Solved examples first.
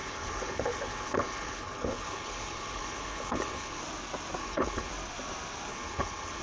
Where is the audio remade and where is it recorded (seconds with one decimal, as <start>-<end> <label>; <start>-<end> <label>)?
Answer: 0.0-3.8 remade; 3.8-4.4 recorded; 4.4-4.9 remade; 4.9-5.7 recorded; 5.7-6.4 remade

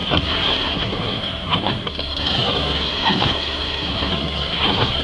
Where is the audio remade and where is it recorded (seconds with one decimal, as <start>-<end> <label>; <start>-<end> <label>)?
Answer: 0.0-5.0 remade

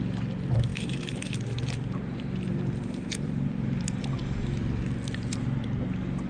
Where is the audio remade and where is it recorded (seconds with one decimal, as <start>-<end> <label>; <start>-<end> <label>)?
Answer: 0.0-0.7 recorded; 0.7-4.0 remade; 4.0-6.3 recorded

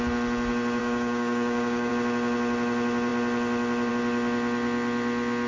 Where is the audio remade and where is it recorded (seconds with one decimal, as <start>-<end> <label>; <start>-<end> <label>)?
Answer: 0.0-0.8 recorded; 0.8-1.9 remade; 1.9-5.5 recorded

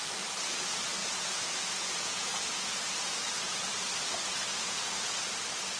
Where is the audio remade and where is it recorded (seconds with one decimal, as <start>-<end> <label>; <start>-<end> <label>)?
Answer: 0.0-1.0 recorded; 1.0-3.7 remade; 3.7-4.5 recorded; 4.5-5.3 remade; 5.3-5.8 recorded

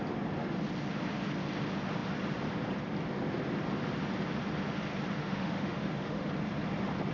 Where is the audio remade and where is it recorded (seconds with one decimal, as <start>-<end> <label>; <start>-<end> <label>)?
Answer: 0.0-5.2 recorded; 5.2-6.3 remade; 6.3-7.1 recorded

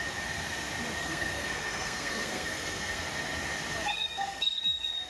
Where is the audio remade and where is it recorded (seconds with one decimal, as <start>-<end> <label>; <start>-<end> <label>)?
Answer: 0.0-1.0 recorded; 1.0-3.0 remade; 3.0-3.9 recorded; 3.9-4.6 remade; 4.6-5.1 recorded

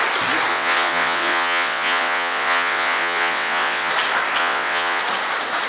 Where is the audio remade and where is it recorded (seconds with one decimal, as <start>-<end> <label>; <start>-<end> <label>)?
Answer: 0.0-0.5 recorded; 0.5-3.9 remade; 3.9-4.4 recorded; 4.4-5.0 remade; 5.0-5.7 recorded